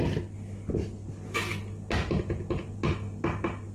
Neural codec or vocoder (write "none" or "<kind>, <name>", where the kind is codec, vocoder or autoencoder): none